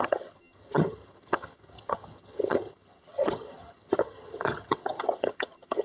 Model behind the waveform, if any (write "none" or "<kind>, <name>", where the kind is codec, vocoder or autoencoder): vocoder, HiFi-GAN